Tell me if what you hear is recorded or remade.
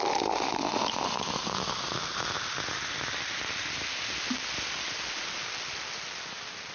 recorded